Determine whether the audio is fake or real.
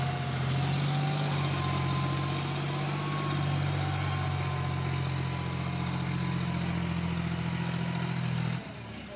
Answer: real